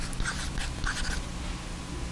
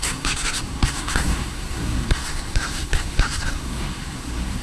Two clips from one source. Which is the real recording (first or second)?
first